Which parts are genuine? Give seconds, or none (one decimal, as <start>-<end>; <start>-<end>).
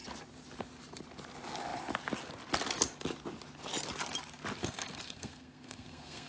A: 0.0-4.6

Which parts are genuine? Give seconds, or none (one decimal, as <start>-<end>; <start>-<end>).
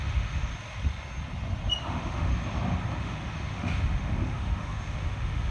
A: 0.5-1.8; 2.3-3.0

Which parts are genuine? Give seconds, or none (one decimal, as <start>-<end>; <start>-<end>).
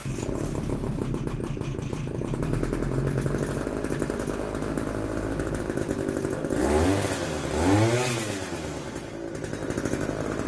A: 0.0-10.5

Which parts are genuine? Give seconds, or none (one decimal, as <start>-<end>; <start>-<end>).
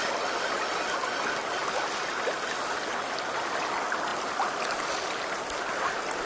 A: 0.0-6.3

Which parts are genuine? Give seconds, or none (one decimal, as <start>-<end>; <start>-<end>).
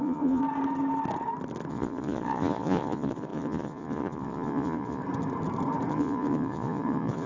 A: 0.4-1.7; 5.0-5.9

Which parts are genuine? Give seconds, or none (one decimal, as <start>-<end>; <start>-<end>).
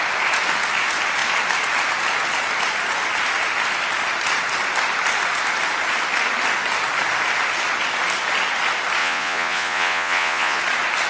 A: 0.0-9.0; 10.6-11.1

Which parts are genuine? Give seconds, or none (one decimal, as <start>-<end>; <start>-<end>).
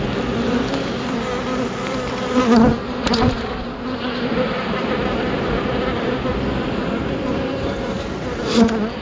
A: 0.0-2.7; 6.3-7.0; 8.1-9.0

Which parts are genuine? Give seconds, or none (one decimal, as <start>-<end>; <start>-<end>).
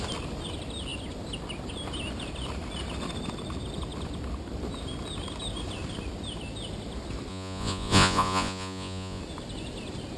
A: 0.0-7.3; 9.2-10.2